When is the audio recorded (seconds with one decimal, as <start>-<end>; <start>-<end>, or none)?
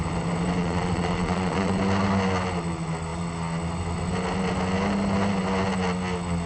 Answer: 0.0-0.6; 1.8-6.5